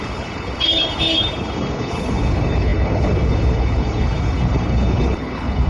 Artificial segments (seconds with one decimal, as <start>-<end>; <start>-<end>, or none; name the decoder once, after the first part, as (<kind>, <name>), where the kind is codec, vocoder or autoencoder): 0.0-5.7 (codec, HILCodec)